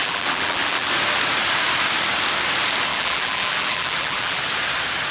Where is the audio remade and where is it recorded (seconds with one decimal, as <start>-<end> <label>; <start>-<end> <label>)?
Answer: 0.0-0.9 remade; 0.9-2.9 recorded; 2.9-4.4 remade; 4.4-5.1 recorded